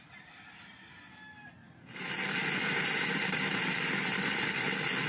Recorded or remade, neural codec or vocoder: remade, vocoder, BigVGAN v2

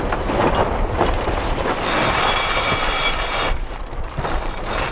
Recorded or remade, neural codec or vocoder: recorded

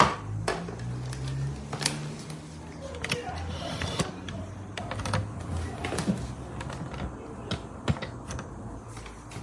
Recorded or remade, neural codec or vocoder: recorded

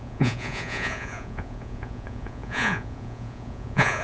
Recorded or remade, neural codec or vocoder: remade, vocoder, Vocos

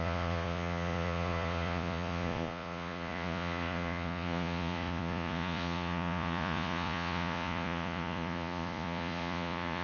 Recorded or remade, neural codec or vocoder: remade, vocoder, Vocos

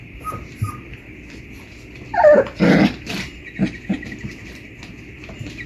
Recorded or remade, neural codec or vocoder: remade, vocoder, BigVGAN v2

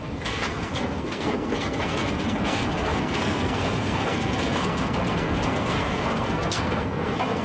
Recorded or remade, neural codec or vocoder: remade, codec, SNAC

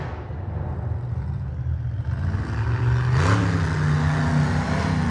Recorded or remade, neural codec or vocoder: recorded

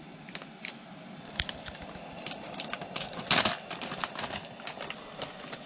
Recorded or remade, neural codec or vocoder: recorded